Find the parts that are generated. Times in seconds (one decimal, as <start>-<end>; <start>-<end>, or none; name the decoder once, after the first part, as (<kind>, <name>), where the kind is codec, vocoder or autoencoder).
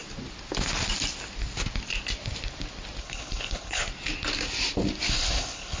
3.0-3.8 (codec, HILCodec); 5.1-5.8